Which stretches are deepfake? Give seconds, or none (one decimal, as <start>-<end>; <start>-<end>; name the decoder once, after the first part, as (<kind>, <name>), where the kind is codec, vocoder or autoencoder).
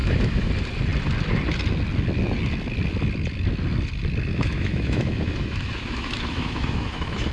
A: 0.0-0.5 (autoencoder, DAC-VAE); 4.3-7.3